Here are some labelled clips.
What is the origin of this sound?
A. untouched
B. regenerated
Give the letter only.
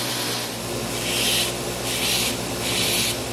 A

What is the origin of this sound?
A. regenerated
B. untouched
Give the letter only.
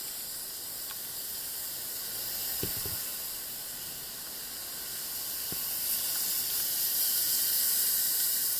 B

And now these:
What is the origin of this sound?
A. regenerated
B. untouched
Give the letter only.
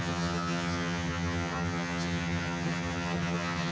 A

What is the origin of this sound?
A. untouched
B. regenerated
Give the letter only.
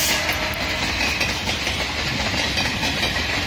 A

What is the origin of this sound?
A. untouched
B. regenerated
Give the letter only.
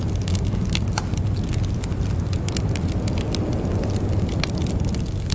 A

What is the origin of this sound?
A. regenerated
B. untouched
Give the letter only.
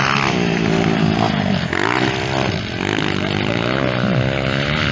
B